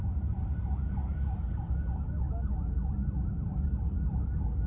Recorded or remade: recorded